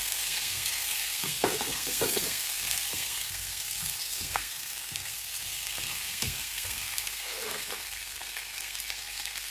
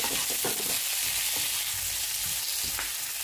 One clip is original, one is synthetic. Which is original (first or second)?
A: second